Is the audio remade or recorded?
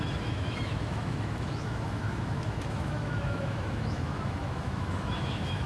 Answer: remade